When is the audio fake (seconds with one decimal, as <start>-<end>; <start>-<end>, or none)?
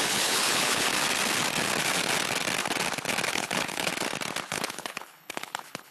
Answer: 0.0-0.9; 3.3-3.9; 4.5-5.9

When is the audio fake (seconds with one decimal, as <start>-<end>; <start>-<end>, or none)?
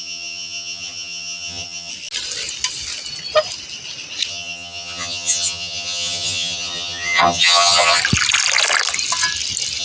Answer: 0.0-1.9; 4.3-8.0